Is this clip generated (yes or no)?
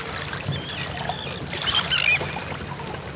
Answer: no